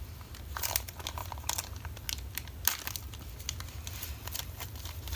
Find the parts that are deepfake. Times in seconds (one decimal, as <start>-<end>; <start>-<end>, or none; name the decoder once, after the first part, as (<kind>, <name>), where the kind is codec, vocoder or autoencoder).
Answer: none